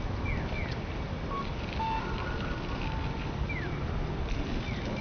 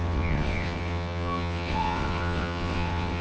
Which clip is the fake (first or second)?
second